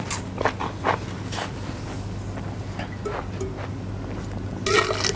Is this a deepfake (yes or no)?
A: no